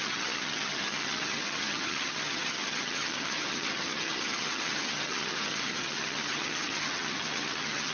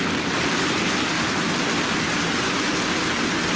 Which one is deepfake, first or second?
first